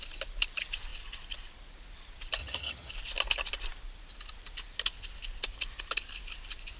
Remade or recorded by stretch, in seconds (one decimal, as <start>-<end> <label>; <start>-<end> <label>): 0.0-2.4 recorded; 2.4-2.9 remade; 2.9-6.8 recorded